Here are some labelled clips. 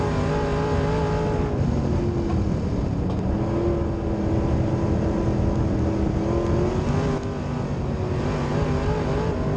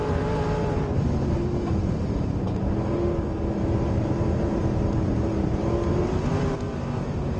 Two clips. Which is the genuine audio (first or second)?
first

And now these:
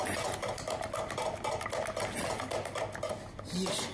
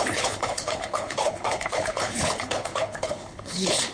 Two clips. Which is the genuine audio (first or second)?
first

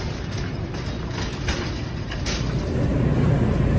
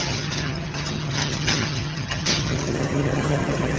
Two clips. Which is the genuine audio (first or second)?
first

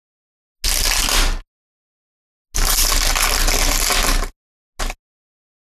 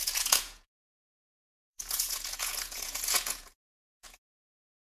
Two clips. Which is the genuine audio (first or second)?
first